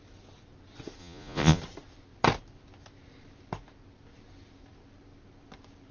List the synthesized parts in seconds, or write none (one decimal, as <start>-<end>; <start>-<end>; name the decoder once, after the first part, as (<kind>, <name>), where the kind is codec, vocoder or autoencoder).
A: 1.0-1.6 (vocoder, Vocos)